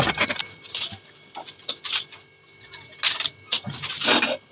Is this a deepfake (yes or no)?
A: no